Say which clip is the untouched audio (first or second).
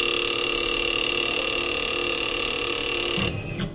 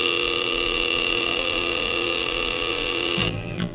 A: first